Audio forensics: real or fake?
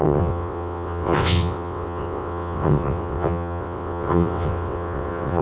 fake